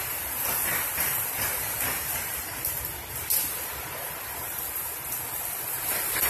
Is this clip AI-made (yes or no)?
no